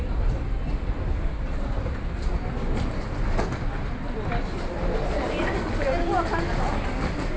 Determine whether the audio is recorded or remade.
recorded